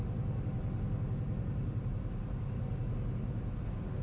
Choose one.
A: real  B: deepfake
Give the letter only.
A